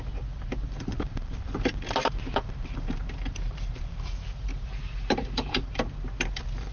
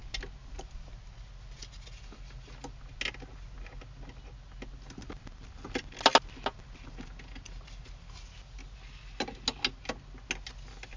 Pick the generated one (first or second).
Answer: first